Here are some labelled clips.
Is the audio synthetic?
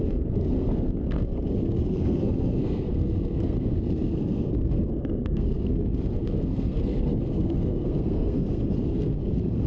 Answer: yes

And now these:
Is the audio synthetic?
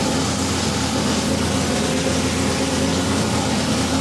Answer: no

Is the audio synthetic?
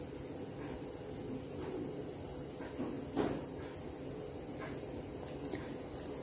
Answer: no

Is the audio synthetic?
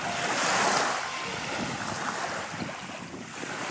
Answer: no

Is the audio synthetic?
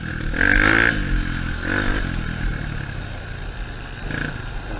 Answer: no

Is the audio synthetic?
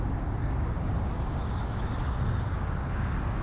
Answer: yes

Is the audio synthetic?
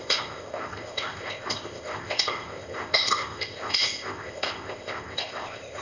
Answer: yes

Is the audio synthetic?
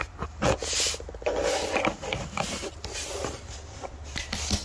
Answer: no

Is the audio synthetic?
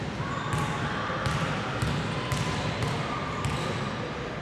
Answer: no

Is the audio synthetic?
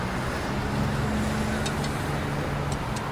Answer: no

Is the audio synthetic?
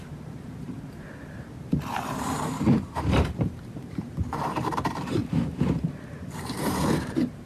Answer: yes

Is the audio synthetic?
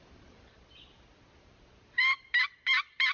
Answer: yes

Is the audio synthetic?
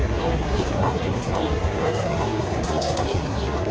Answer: yes